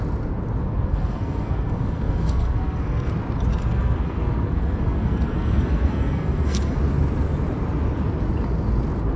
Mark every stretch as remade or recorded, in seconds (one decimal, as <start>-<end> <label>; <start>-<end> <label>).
0.0-0.6 recorded; 0.6-3.1 remade; 3.1-3.5 recorded; 3.5-6.8 remade; 6.8-9.2 recorded